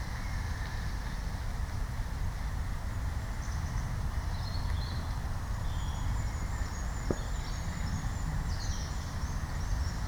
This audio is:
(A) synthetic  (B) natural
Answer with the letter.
B